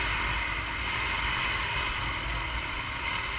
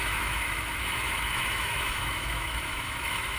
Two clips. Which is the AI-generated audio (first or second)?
second